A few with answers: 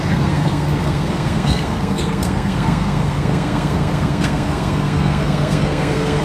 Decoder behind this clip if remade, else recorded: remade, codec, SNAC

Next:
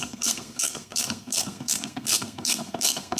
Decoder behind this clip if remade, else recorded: remade, codec, SNAC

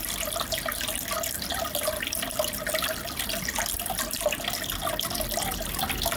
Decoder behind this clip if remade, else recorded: recorded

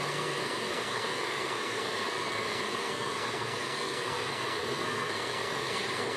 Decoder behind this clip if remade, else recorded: remade, codec, SNAC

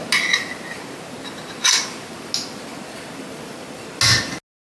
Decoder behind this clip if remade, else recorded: recorded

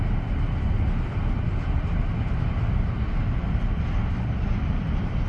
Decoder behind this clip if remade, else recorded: recorded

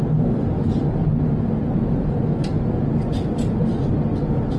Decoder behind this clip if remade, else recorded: recorded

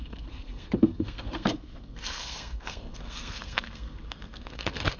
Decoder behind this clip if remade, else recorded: remade, codec, SNAC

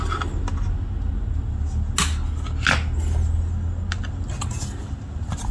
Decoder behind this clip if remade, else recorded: recorded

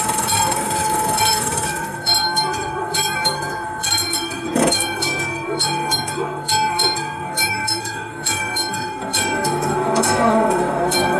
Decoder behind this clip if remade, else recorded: remade, codec, SNAC